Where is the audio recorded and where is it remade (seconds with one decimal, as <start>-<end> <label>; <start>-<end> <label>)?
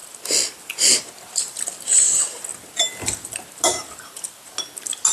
0.0-5.1 recorded